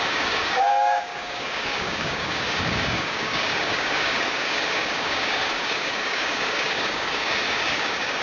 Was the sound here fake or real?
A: fake